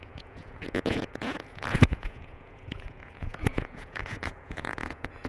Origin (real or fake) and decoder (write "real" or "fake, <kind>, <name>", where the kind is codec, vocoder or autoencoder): fake, vocoder, Vocos